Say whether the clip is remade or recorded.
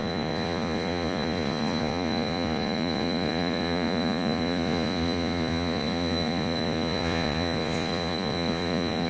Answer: remade